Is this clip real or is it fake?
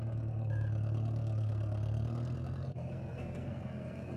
fake